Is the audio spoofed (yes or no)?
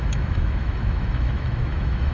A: yes